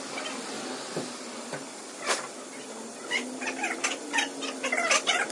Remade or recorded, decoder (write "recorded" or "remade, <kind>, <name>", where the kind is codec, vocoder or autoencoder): recorded